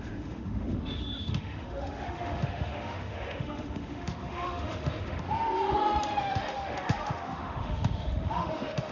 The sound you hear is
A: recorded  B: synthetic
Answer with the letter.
B